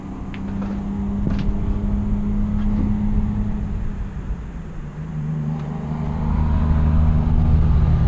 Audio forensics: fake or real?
real